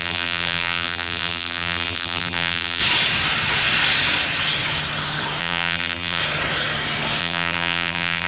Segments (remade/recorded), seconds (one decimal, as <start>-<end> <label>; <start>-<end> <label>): 0.0-2.8 remade; 2.8-5.4 recorded; 5.4-6.2 remade; 6.2-7.2 recorded; 7.2-8.3 remade